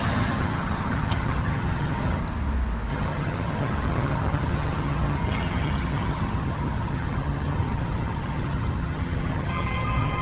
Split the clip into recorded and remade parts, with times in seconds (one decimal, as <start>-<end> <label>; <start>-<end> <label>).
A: 0.0-2.2 remade; 2.2-2.9 recorded; 2.9-10.2 remade